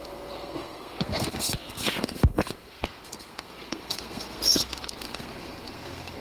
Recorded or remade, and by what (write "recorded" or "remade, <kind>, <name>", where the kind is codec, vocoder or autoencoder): remade, codec, SNAC